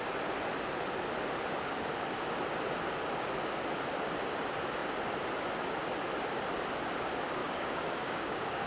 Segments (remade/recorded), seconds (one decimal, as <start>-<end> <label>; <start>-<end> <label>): 0.0-7.4 recorded; 7.4-8.7 remade